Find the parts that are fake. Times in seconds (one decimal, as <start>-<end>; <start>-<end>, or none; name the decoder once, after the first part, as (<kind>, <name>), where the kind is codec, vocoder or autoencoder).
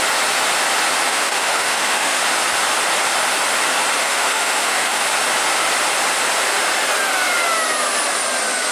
1.1-2.2 (autoencoder, DAC-VAE); 4.0-5.0